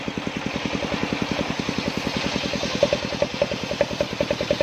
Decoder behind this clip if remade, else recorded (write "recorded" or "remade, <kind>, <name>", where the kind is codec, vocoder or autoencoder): recorded